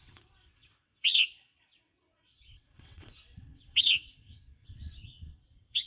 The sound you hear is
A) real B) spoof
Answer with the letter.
B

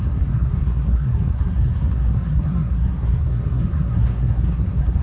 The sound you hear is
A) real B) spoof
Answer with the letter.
B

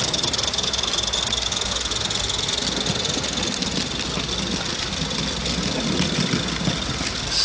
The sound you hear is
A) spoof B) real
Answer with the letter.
B